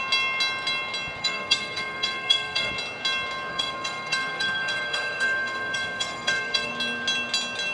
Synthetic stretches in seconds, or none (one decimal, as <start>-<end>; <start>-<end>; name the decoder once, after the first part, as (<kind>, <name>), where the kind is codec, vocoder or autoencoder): 1.2-2.7 (codec, SNAC); 3.5-6.7